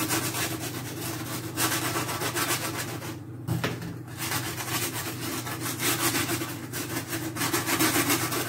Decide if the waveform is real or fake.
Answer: real